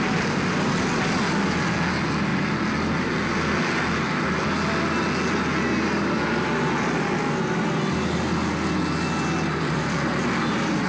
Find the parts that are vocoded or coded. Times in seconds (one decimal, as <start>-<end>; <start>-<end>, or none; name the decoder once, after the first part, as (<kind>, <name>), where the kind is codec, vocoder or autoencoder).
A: none